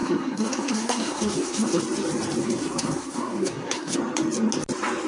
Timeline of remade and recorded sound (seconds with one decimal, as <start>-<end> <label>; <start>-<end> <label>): 0.0-1.8 remade; 1.8-2.4 recorded; 2.4-4.0 remade; 4.0-5.1 recorded